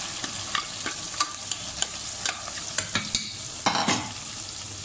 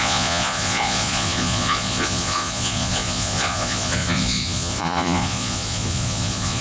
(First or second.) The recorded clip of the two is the first